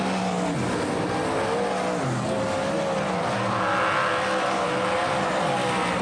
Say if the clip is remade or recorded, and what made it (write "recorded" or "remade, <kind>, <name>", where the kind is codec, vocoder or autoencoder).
recorded